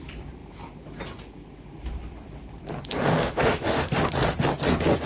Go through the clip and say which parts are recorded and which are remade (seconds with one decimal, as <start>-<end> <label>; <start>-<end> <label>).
0.0-3.2 recorded; 3.2-4.1 remade; 4.1-5.1 recorded